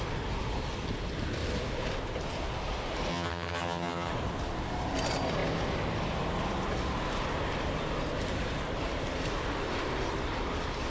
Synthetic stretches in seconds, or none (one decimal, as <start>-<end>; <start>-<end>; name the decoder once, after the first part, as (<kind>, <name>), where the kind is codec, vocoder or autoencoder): 3.1-4.1 (vocoder, HiFi-GAN)